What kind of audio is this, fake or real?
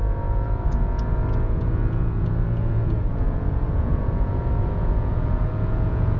fake